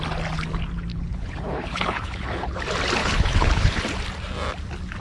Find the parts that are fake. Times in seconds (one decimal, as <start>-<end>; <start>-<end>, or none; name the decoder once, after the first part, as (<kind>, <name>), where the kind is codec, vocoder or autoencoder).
0.9-2.6 (codec, HILCodec); 3.0-3.8